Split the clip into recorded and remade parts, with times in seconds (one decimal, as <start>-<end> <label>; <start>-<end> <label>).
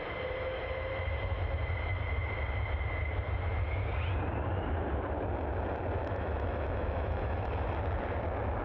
0.0-6.0 recorded; 6.0-7.5 remade; 7.5-8.6 recorded